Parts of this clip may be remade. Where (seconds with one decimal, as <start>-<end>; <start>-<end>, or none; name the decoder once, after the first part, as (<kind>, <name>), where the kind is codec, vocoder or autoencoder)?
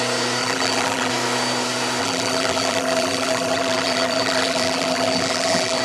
0.4-1.1 (vocoder, BigVGAN v2); 2.0-5.8